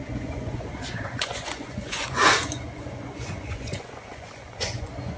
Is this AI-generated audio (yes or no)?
yes